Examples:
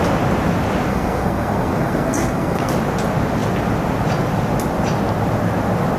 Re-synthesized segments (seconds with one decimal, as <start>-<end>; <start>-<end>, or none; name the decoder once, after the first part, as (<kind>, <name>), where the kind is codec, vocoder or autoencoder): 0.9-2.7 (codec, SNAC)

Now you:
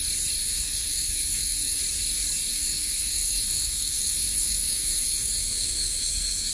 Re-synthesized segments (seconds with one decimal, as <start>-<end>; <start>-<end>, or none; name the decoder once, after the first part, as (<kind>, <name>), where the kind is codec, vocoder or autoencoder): 0.4-1.8 (codec, SNAC); 2.5-6.5

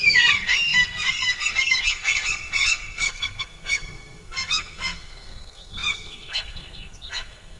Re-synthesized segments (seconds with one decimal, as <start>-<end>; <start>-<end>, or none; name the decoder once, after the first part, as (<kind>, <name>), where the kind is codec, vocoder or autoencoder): 0.0-7.6 (codec, SNAC)

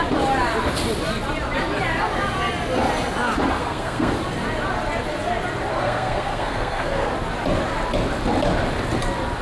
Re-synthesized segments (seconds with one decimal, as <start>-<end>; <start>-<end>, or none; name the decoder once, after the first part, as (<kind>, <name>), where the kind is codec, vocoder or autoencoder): 3.6-4.1 (codec, SNAC); 5.7-7.1

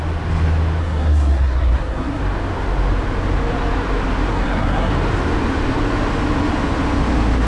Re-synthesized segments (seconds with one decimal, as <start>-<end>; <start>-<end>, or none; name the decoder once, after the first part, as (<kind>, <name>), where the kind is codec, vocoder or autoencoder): 0.8-2.2 (codec, SNAC); 4.3-4.9

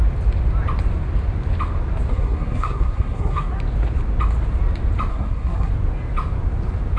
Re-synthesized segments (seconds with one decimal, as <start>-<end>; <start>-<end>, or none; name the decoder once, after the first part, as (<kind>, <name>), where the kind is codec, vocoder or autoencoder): 2.1-3.5 (codec, SNAC); 5.1-5.7

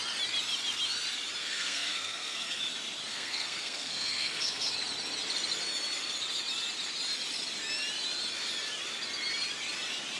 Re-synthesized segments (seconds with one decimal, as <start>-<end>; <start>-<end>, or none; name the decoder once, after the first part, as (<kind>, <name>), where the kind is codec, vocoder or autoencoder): 1.4-2.6 (codec, SNAC); 3.1-4.7